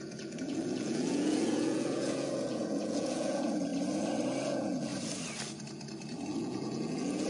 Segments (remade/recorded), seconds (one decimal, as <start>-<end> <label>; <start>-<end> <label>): 0.0-3.7 remade; 3.7-4.4 recorded; 4.4-4.9 remade; 4.9-6.4 recorded; 6.4-7.3 remade